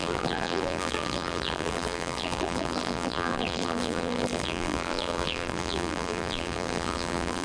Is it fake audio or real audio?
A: fake